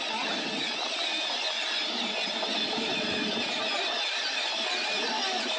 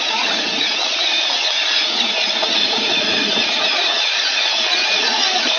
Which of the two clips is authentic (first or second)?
first